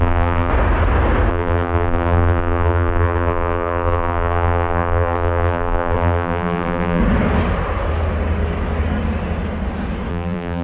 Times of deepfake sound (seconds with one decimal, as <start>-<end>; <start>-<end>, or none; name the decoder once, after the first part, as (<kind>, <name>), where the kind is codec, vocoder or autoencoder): 0.0-0.5 (vocoder, BigVGAN v2); 1.3-7.0; 10.1-10.6